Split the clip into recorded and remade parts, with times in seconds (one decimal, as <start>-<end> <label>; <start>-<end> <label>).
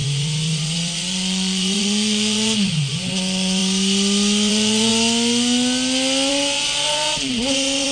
0.0-3.6 remade; 3.6-4.5 recorded; 4.5-4.9 remade; 4.9-6.3 recorded; 6.3-7.9 remade